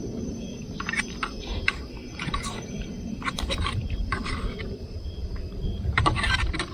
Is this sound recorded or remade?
remade